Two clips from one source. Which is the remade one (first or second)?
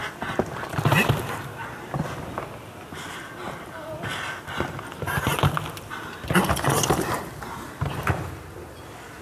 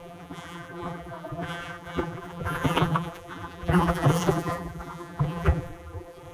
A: second